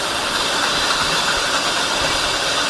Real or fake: real